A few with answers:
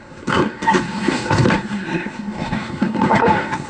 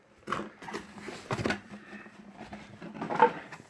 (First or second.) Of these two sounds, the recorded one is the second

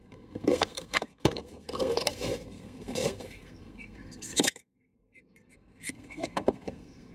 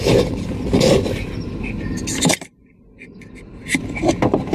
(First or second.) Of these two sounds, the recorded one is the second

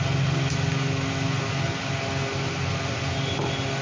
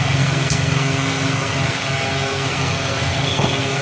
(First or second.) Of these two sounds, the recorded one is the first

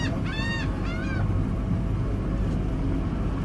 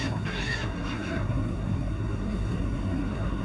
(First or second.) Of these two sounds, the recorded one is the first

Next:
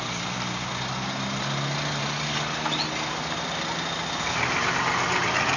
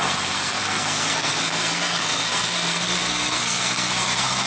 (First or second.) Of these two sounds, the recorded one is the first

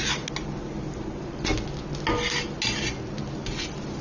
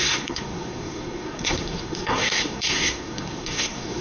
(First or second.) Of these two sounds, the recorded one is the first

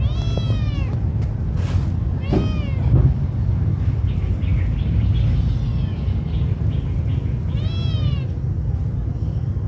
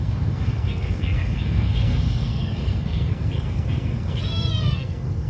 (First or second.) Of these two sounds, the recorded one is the first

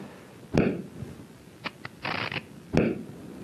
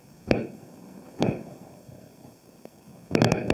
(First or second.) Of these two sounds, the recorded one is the first